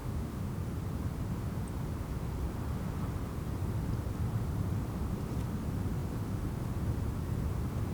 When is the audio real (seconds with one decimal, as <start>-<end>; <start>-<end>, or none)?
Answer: 0.5-7.9